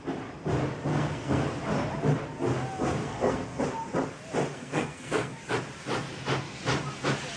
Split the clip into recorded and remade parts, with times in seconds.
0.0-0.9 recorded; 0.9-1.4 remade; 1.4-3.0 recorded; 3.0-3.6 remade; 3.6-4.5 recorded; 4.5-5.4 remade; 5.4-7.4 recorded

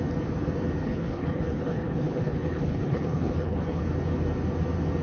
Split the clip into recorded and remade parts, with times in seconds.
0.0-0.8 recorded; 0.8-3.8 remade; 3.8-5.0 recorded

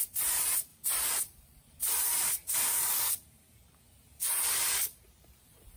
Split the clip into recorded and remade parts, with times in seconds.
0.0-5.8 remade

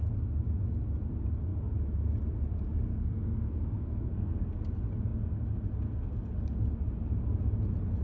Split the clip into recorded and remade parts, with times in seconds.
0.0-2.9 recorded; 2.9-4.5 remade; 4.5-8.0 recorded

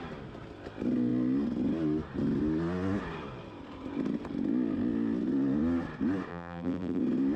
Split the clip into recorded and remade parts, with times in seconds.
0.0-6.3 recorded; 6.3-7.0 remade; 7.0-7.4 recorded

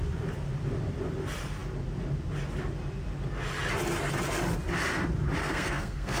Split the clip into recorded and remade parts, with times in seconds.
0.0-5.4 recorded; 5.4-6.2 remade